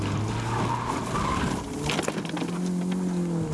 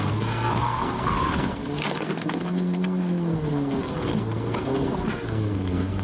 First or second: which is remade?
second